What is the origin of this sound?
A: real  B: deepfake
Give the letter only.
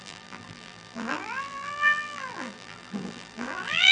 B